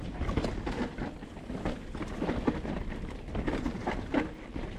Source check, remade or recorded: recorded